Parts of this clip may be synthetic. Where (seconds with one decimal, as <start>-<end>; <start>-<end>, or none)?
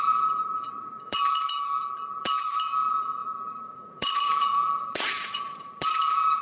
0.0-6.4